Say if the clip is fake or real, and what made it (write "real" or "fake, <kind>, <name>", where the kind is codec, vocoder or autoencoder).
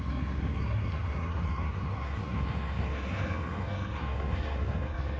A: fake, codec, SNAC